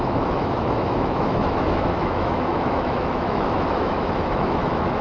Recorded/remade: remade